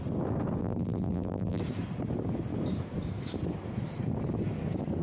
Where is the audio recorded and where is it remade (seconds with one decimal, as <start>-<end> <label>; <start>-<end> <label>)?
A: 0.0-0.6 recorded; 0.6-1.6 remade; 1.6-5.0 recorded